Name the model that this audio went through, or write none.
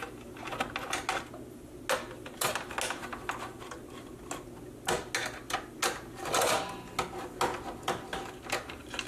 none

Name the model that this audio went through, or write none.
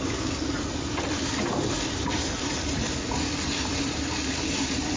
vocoder, BigVGAN v2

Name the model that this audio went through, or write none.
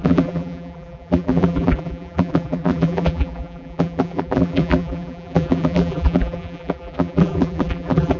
vocoder, BigVGAN v2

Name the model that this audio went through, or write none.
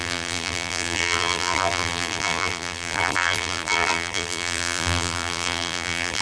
vocoder, BigVGAN v2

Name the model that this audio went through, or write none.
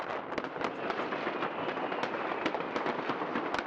none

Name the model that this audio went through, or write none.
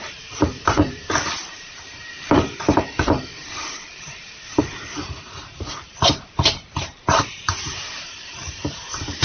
vocoder, BigVGAN v2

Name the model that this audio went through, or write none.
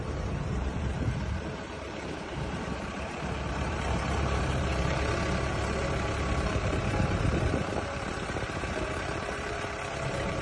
vocoder, BigVGAN v2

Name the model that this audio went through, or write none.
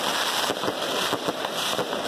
none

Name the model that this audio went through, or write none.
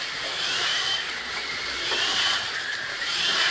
vocoder, BigVGAN v2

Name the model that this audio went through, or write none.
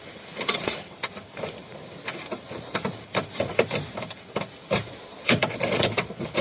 vocoder, BigVGAN v2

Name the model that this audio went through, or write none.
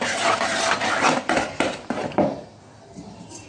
none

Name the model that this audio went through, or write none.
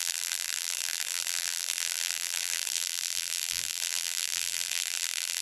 vocoder, BigVGAN v2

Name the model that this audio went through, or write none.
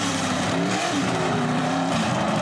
vocoder, BigVGAN v2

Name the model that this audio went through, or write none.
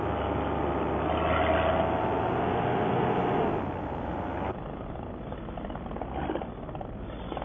none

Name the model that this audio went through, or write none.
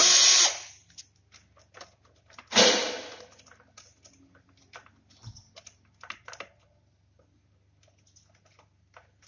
none